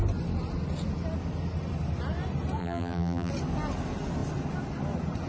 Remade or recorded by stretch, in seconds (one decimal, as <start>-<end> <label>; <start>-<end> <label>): 0.0-2.6 recorded; 2.6-3.3 remade; 3.3-5.3 recorded